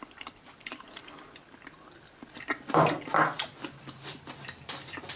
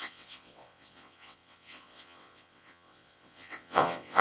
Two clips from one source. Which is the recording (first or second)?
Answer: first